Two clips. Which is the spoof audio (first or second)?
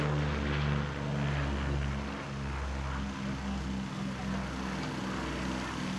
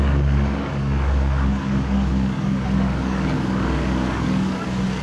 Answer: second